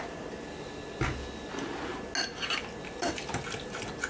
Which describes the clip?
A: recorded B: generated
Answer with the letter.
A